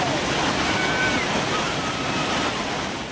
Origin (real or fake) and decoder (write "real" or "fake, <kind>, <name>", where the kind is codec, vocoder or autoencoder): real